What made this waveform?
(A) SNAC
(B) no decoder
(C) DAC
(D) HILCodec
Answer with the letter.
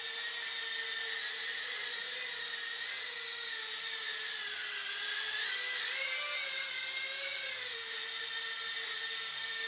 B